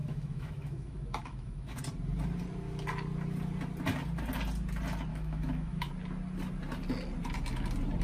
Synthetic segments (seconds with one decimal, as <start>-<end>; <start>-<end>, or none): 0.0-1.8; 5.1-5.9